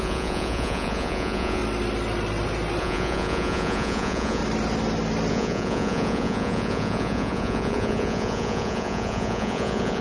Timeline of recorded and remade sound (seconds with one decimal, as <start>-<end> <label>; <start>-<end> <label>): 0.0-1.6 remade; 1.6-2.8 recorded; 2.8-4.4 remade; 4.4-5.3 recorded; 5.3-10.0 remade